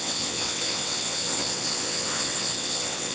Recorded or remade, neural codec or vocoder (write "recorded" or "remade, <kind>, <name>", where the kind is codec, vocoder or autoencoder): remade, vocoder, WaveNeXt